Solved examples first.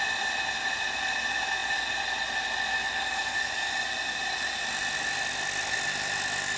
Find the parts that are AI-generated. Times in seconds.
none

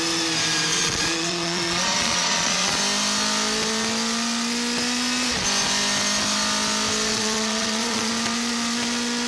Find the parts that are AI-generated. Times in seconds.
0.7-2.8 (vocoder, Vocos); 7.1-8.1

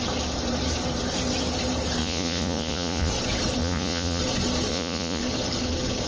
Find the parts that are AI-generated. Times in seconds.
2.0-3.1 (vocoder, Vocos); 3.6-4.2; 4.7-5.2

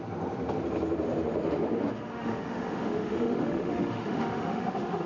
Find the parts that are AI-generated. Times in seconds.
2.1-5.1 (autoencoder, DAC-VAE)

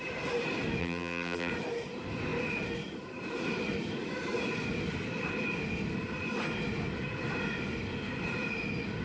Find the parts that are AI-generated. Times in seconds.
0.8-1.5 (vocoder, BigVGAN v2)